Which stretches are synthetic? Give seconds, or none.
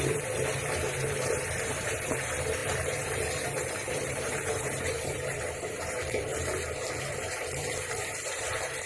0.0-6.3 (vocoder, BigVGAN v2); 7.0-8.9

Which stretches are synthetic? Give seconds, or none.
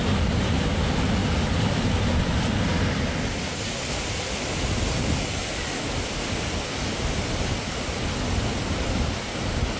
none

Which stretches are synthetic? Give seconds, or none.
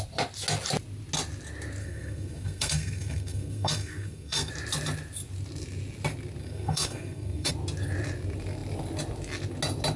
1.8-4.5 (codec, SNAC); 6.4-7.5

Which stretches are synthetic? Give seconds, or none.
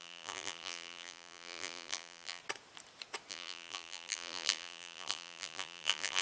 0.0-2.4 (vocoder, BigVGAN v2); 3.3-6.2